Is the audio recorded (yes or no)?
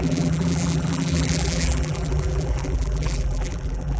no